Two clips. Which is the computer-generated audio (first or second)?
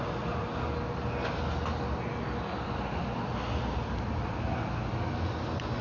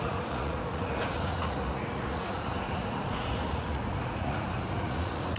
second